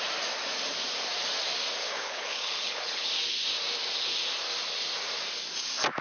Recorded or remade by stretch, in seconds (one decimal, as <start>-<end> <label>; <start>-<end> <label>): 0.0-1.8 recorded; 1.8-3.1 remade; 3.1-6.0 recorded